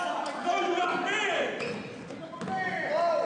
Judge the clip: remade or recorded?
recorded